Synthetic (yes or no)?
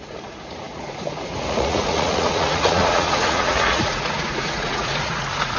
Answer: yes